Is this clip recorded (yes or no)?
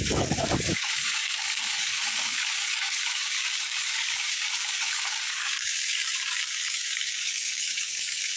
no